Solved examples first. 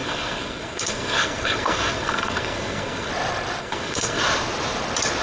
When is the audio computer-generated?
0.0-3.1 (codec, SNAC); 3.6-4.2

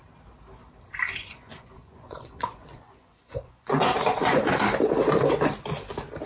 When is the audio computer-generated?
1.2-4.6 (vocoder, Vocos)

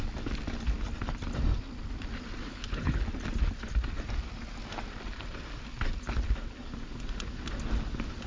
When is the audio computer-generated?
2.5-3.0 (codec, HILCodec)

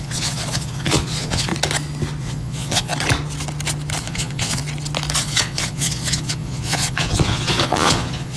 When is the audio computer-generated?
0.0-1.5 (vocoder, Vocos); 2.2-2.9; 4.0-4.6; 5.2-8.4

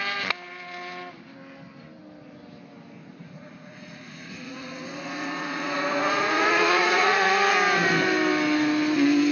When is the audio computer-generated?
3.0-7.5 (vocoder, Vocos)

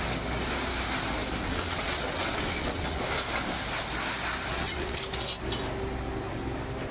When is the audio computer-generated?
1.4-3.0 (vocoder, WaveNeXt); 4.5-5.0

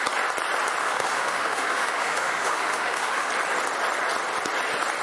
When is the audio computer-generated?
0.8-3.3 (autoencoder, DAC-VAE)